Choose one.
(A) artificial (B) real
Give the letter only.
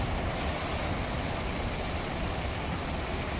B